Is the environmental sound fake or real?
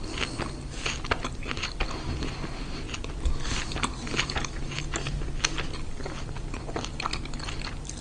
real